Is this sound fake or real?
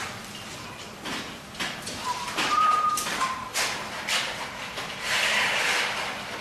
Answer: fake